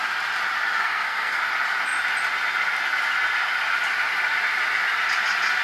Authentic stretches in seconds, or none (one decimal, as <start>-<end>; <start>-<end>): 0.0-0.8; 1.4-5.6